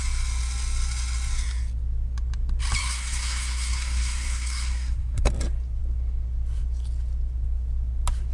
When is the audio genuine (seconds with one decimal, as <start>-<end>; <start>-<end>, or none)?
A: 0.0-2.8; 5.3-8.3